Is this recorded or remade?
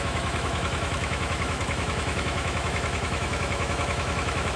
remade